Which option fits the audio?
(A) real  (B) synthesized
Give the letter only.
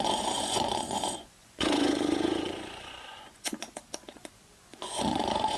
B